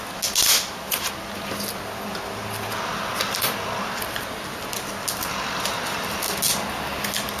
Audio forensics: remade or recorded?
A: recorded